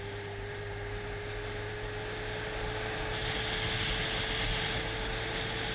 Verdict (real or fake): real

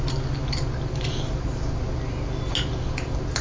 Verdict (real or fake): real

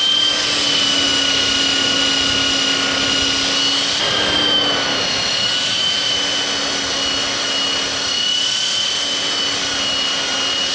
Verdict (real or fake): real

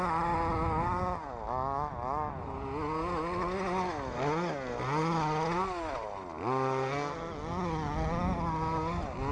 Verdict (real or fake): real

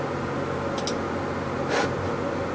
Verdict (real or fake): real